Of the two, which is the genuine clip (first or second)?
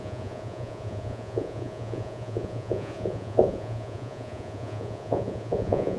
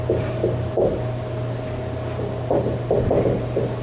second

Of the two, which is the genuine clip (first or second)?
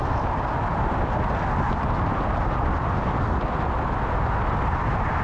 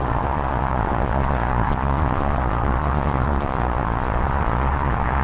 first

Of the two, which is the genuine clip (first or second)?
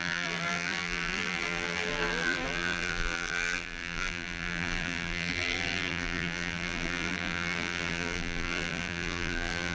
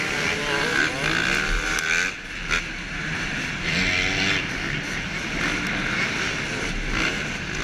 second